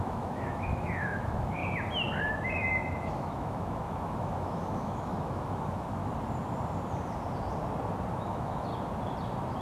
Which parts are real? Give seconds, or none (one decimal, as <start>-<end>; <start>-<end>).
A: 1.6-2.3; 6.0-8.1; 8.7-9.6